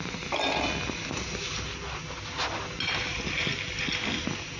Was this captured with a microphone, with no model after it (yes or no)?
yes